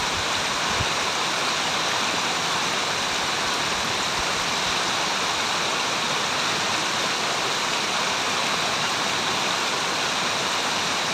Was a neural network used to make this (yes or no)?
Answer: no